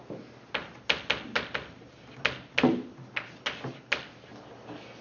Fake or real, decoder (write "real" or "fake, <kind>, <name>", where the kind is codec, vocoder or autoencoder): real